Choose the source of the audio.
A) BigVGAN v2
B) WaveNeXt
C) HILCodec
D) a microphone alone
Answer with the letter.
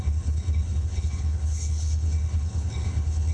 C